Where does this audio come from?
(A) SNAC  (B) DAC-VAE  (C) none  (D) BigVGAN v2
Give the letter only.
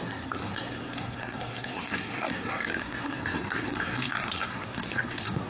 A